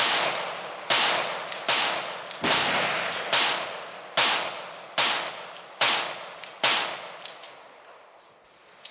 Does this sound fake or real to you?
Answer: real